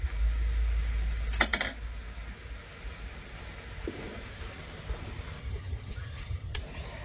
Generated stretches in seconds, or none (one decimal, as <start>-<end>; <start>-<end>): 5.4-6.6